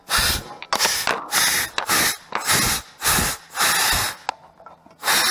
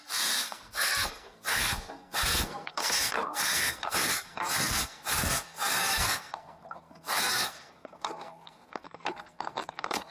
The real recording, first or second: first